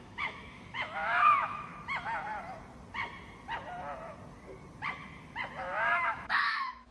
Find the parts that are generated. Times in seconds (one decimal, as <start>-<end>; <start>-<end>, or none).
0.0-1.7; 5.6-6.9